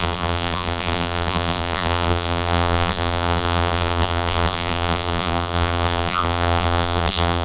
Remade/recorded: remade